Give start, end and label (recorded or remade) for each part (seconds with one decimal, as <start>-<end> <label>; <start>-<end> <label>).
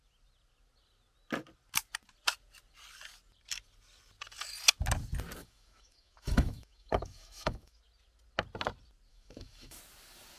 0.0-5.4 recorded; 5.4-7.8 remade; 7.8-9.1 recorded; 9.1-9.8 remade; 9.8-10.4 recorded